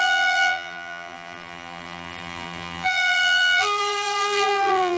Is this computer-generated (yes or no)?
yes